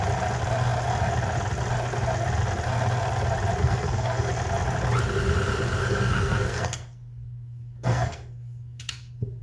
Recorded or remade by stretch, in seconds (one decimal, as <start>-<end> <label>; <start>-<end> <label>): 0.0-3.6 recorded; 3.6-4.3 remade; 4.3-5.8 recorded; 5.8-9.4 remade